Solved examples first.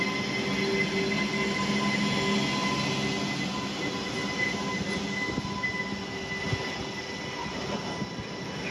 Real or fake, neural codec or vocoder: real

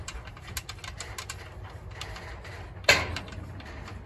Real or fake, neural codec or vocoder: real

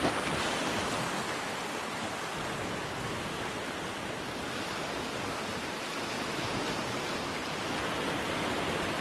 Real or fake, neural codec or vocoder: real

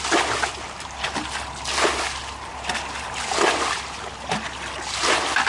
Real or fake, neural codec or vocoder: real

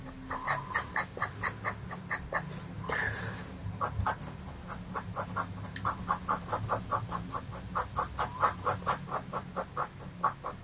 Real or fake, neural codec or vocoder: real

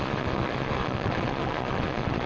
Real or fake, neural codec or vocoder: fake, vocoder, Vocos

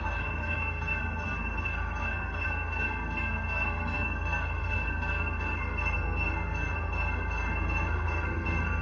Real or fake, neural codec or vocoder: fake, codec, SNAC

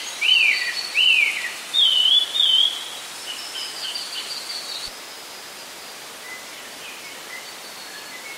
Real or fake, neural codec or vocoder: real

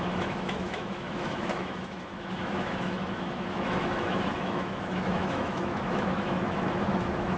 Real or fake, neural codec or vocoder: fake, autoencoder, DAC-VAE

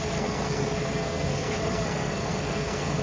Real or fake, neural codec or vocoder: fake, codec, SNAC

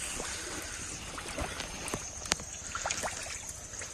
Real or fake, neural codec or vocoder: real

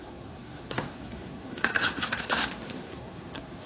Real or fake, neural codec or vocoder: fake, codec, SNAC